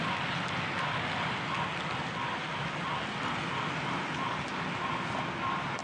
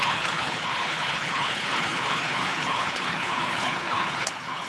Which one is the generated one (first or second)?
second